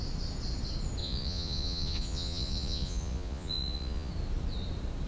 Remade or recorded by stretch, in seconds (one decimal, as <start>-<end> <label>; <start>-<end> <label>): 0.0-1.0 recorded; 1.0-4.1 remade; 4.1-5.1 recorded